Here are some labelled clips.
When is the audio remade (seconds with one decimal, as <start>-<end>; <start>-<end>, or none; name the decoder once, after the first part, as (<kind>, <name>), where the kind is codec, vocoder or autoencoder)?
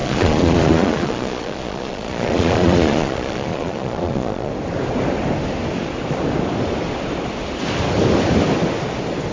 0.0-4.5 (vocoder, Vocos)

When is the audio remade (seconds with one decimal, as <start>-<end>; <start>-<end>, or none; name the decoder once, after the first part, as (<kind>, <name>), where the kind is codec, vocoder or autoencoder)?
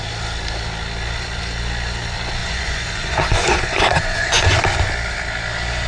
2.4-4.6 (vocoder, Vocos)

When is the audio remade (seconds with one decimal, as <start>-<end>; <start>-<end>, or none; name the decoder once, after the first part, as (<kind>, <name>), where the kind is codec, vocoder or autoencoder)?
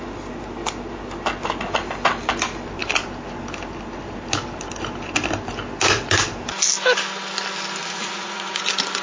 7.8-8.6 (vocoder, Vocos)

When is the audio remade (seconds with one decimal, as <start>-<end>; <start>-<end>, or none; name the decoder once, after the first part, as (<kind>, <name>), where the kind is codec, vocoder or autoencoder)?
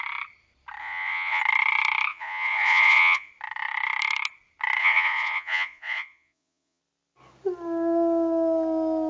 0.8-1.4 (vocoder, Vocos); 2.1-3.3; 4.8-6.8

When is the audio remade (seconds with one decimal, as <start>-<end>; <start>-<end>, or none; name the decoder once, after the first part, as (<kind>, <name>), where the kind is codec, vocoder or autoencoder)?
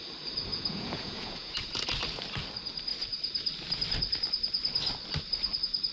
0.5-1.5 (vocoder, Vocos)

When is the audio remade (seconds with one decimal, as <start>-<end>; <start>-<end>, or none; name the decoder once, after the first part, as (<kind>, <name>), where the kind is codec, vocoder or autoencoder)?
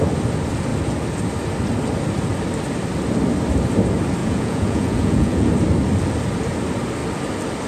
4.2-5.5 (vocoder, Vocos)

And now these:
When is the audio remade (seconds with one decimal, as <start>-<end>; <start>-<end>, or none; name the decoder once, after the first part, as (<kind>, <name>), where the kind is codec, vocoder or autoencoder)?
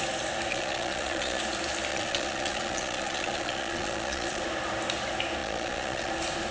0.5-1.4 (vocoder, Vocos); 1.9-4.4; 5.4-6.1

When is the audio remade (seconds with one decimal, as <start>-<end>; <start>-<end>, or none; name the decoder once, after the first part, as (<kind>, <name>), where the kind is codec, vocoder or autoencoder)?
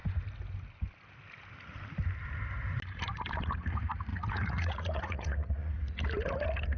4.1-5.7 (vocoder, Vocos)